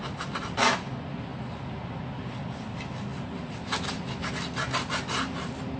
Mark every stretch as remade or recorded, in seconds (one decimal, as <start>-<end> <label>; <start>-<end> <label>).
0.0-5.8 recorded

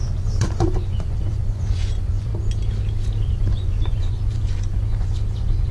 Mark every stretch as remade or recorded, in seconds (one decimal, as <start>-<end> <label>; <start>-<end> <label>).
0.0-2.3 remade; 2.3-3.2 recorded; 3.2-5.7 remade

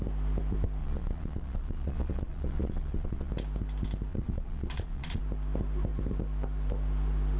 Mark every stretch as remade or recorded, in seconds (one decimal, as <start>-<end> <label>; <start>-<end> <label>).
0.0-0.8 recorded; 0.8-3.3 remade; 3.3-4.1 recorded; 4.1-5.2 remade; 5.2-7.4 recorded

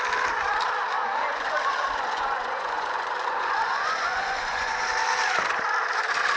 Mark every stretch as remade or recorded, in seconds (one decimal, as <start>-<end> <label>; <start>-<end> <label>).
0.0-1.0 recorded; 1.0-4.8 remade; 4.8-6.4 recorded